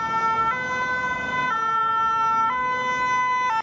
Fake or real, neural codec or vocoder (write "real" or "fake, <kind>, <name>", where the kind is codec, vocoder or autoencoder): real